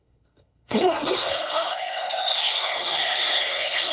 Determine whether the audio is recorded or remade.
remade